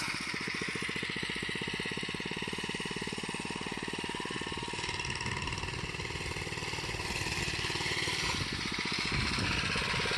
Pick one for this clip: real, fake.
real